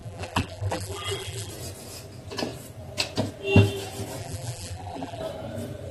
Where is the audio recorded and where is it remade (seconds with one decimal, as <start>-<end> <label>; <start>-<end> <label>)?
0.0-1.5 remade; 1.5-4.2 recorded; 4.2-5.2 remade; 5.2-5.9 recorded